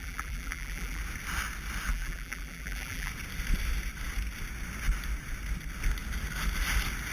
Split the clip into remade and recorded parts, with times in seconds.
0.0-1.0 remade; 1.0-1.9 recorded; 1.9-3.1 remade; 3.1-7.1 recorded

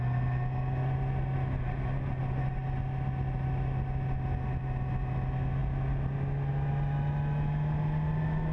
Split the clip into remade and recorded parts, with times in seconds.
0.0-8.5 recorded